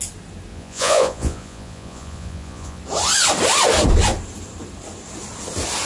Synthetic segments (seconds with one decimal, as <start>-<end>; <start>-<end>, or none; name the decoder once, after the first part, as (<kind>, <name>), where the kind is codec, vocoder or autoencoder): 0.5-2.8 (vocoder, Vocos)